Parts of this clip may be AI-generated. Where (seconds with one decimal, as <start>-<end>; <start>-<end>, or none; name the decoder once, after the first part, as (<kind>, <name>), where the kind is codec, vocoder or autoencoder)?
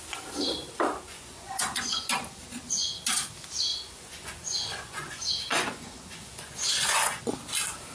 1.1-2.1 (vocoder, Vocos); 3.7-7.2